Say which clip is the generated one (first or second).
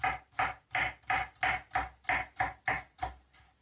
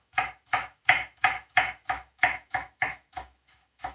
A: second